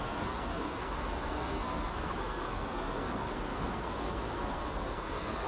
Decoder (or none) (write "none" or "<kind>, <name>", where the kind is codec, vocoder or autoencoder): codec, SNAC